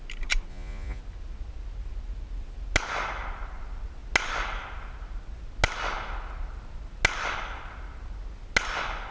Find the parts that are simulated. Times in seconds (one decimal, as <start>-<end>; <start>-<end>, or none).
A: 0.5-1.0